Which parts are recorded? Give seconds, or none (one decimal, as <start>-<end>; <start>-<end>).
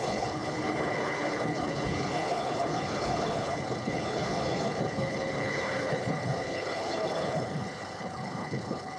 none